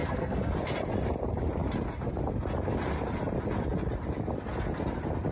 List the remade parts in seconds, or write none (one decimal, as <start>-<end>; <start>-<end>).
0.0-0.5